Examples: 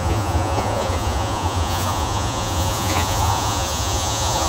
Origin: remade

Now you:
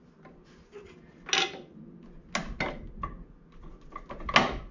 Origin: recorded